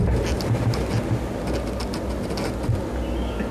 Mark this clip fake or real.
real